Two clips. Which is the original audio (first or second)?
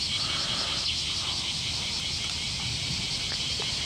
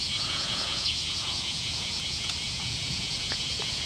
first